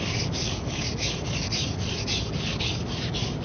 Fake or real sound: fake